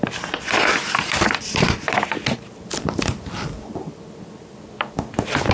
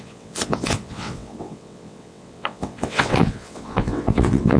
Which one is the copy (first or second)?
second